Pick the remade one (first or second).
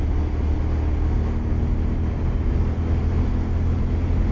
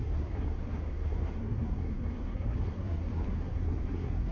second